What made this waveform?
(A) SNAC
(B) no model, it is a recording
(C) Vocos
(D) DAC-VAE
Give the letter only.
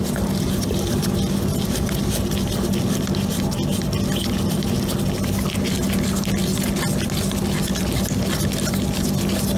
B